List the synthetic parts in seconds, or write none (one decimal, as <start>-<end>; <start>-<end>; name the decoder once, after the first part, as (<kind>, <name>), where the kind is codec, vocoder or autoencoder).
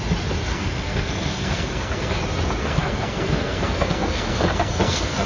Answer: 0.5-2.2 (codec, SNAC); 2.6-5.3